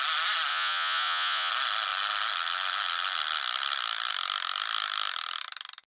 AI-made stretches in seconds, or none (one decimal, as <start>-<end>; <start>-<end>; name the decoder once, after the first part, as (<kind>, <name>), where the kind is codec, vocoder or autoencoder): 0.5-1.5 (vocoder, Vocos)